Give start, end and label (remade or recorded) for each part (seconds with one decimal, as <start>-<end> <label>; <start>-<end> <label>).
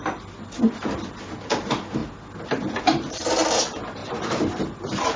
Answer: 0.0-4.0 recorded; 4.0-4.8 remade; 4.8-5.2 recorded